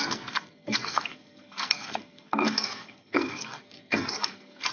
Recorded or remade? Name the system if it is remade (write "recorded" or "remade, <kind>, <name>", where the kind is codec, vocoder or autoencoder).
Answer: remade, codec, SNAC